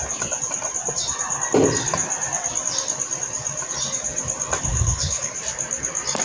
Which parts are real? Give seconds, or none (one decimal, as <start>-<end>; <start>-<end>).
0.0-4.6; 5.3-6.2